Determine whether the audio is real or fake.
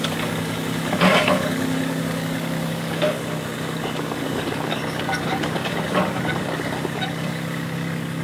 fake